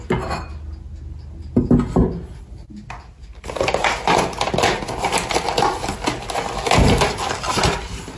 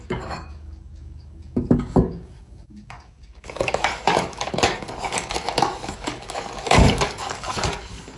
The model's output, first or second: second